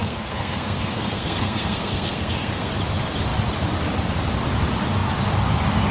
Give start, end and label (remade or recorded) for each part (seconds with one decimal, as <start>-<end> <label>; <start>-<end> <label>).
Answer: 0.0-2.7 remade; 2.7-5.9 recorded